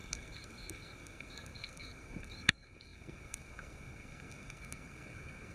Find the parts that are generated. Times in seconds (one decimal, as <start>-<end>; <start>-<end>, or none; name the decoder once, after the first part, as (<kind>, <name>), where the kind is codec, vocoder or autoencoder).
0.0-5.5 (codec, SNAC)